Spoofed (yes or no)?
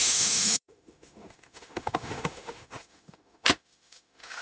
yes